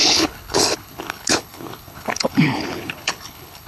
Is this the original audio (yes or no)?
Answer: no